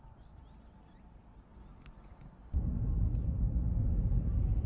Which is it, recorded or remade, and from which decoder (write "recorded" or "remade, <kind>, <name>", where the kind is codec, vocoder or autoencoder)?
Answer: recorded